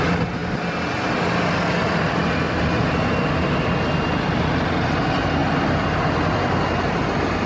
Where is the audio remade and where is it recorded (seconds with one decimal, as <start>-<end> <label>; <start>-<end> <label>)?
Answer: 0.0-7.5 recorded